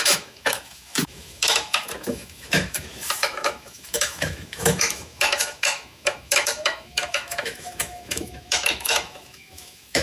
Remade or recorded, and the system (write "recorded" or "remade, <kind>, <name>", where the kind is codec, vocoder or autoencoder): remade, autoencoder, DAC-VAE